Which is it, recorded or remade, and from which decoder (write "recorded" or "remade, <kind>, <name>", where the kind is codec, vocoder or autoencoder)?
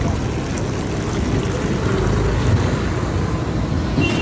recorded